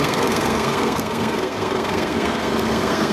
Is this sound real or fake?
fake